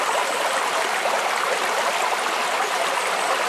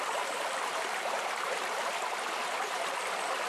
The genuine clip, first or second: first